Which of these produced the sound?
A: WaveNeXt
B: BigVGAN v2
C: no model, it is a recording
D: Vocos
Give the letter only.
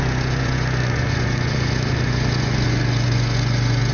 D